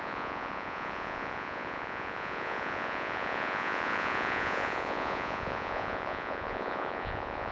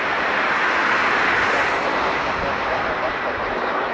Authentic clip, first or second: second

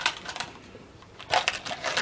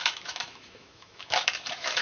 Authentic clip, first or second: first